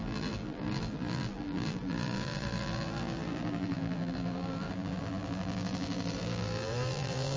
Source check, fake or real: fake